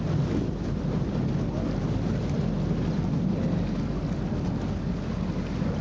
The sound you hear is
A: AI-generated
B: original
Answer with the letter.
B